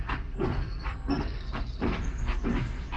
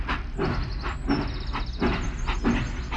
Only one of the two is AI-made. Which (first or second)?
first